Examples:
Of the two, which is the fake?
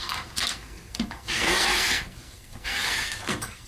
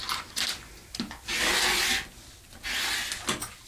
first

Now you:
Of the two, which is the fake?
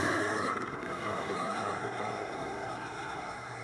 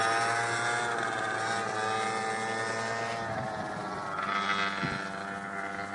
first